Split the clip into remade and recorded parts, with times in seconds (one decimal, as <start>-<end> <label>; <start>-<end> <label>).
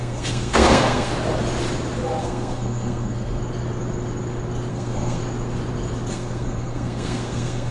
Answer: 0.0-1.1 remade; 1.1-2.2 recorded; 2.2-3.4 remade; 3.4-4.7 recorded; 4.7-5.2 remade; 5.2-6.1 recorded; 6.1-7.7 remade